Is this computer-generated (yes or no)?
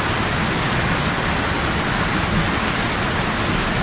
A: no